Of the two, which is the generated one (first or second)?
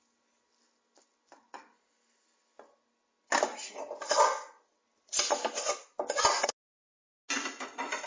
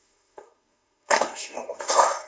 second